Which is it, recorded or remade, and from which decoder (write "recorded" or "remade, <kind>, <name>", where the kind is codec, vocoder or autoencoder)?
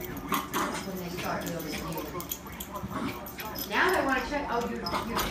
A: recorded